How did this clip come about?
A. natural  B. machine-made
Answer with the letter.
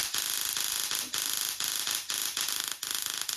A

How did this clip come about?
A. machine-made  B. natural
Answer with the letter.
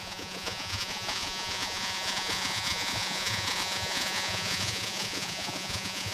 A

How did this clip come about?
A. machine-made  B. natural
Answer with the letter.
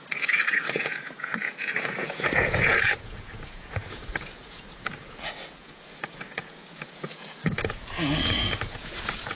A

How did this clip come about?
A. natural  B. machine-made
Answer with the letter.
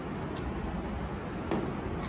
A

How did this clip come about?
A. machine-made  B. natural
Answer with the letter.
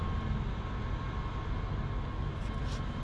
B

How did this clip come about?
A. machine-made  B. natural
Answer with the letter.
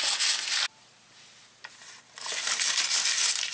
B